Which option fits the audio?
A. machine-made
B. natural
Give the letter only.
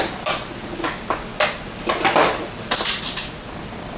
B